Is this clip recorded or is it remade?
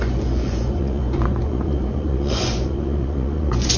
remade